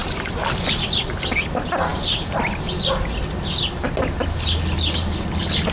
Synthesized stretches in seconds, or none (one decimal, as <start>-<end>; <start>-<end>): none